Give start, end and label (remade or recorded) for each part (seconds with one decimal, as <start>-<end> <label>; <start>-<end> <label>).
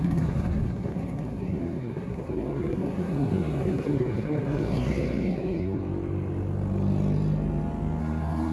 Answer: 0.0-5.8 remade; 5.8-8.0 recorded; 8.0-8.5 remade